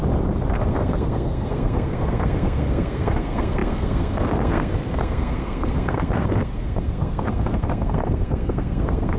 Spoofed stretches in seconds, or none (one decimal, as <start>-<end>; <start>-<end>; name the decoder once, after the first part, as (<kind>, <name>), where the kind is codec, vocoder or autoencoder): 0.6-9.2 (codec, SNAC)